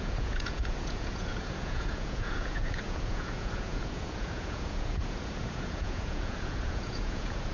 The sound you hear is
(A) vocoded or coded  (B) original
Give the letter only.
A